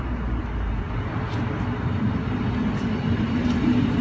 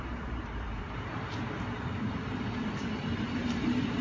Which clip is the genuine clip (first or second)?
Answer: first